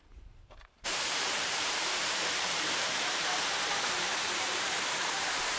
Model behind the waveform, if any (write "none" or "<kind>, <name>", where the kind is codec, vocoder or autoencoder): vocoder, BigVGAN v2